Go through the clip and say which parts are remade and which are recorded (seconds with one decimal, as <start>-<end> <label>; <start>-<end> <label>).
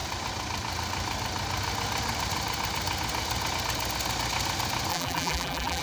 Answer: 0.0-4.9 recorded; 4.9-5.8 remade